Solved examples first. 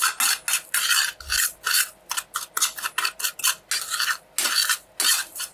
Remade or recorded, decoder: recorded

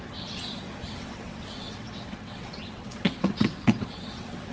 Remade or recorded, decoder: remade, vocoder, WaveNeXt